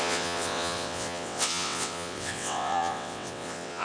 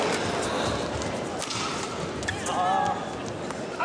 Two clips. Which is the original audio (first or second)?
second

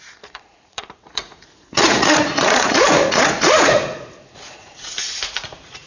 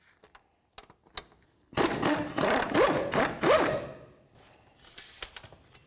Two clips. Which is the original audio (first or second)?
second